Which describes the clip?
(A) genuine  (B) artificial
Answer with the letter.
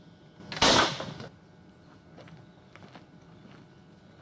A